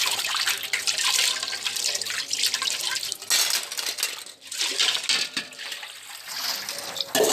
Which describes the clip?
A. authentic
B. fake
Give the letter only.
A